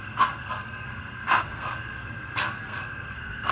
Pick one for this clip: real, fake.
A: fake